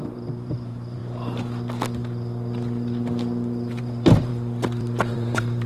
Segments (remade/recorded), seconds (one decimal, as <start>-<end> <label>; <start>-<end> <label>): 0.0-1.0 remade; 1.0-3.8 recorded; 3.8-4.3 remade; 4.3-5.1 recorded; 5.1-5.7 remade